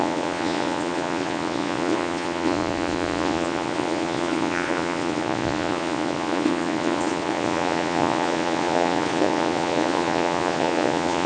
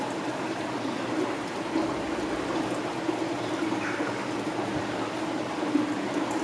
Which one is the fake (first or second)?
first